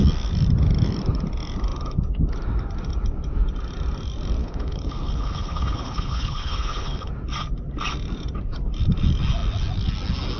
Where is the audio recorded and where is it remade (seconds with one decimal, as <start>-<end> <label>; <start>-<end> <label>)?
0.0-4.4 recorded; 4.4-7.1 remade; 7.1-10.4 recorded